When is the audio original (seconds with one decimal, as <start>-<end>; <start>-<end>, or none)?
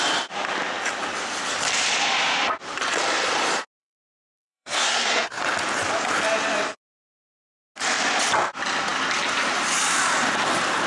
0.0-3.8; 5.4-10.9